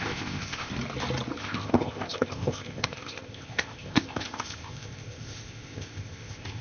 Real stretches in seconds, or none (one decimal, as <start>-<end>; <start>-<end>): 0.7-1.4